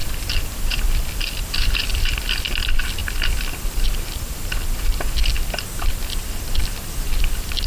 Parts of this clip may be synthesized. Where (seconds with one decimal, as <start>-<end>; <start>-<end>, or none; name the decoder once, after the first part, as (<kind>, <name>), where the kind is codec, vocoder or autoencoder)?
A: none